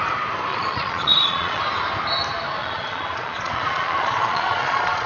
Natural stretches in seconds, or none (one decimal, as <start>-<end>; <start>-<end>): 0.0-0.5; 1.6-2.6